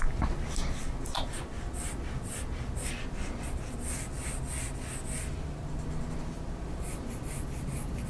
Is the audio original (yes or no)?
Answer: yes